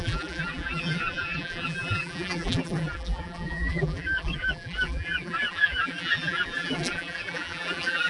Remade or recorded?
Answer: remade